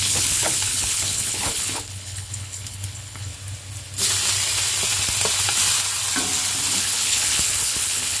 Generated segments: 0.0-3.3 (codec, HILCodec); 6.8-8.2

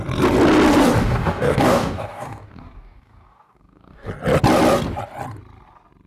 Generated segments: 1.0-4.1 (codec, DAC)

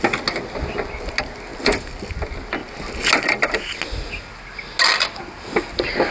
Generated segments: none